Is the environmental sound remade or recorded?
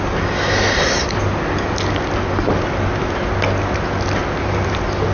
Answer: recorded